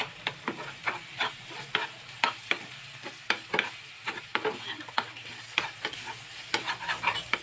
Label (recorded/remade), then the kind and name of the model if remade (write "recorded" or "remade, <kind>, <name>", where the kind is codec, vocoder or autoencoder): recorded